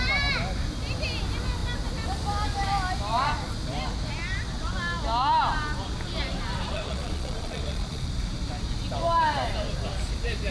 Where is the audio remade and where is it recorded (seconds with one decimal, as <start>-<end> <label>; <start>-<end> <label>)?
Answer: 0.0-6.7 recorded; 6.7-8.1 remade; 8.1-10.5 recorded